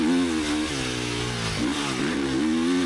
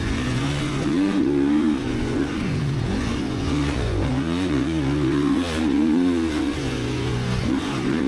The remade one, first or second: second